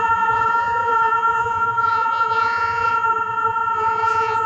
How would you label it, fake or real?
fake